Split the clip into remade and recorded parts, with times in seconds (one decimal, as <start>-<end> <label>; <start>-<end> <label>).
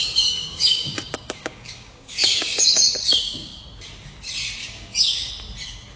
0.0-3.6 remade; 3.6-4.6 recorded; 4.6-5.3 remade; 5.3-6.0 recorded